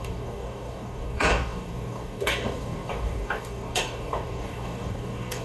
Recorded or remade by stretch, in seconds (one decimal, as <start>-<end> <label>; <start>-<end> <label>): 0.0-5.4 remade